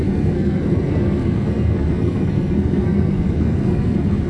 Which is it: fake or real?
fake